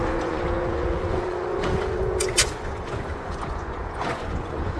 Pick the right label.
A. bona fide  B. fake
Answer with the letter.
B